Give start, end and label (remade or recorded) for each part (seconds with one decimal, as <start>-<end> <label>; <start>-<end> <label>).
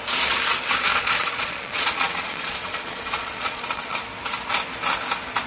0.0-0.9 recorded; 0.9-4.0 remade; 4.0-5.5 recorded